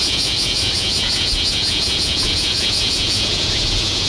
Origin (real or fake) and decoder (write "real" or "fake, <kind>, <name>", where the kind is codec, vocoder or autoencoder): fake, vocoder, Vocos